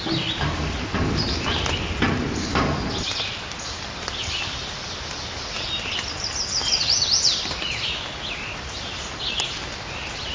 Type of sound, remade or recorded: recorded